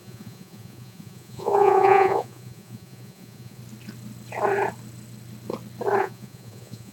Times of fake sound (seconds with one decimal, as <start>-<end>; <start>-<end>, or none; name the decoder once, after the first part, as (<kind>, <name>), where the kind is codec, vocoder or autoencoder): 0.0-3.6 (vocoder, Vocos); 6.0-6.9